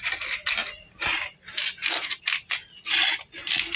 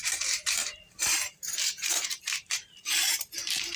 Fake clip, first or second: second